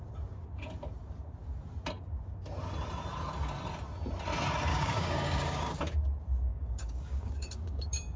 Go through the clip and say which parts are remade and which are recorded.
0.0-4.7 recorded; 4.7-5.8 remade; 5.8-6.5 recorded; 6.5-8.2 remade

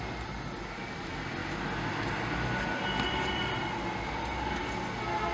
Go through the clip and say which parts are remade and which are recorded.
0.0-5.3 recorded

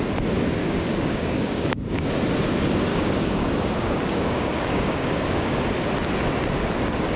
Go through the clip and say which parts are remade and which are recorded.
0.0-0.6 recorded; 0.6-2.2 remade; 2.2-2.9 recorded; 2.9-5.6 remade; 5.6-7.2 recorded

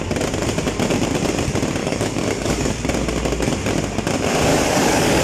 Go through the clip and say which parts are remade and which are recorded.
0.0-1.8 recorded; 1.8-2.7 remade; 2.7-4.5 recorded; 4.5-5.2 remade

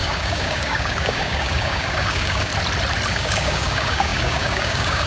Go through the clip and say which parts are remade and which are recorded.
0.0-2.5 remade; 2.5-3.1 recorded; 3.1-5.1 remade